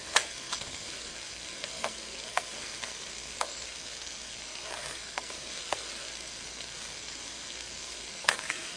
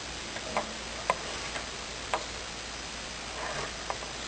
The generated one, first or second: first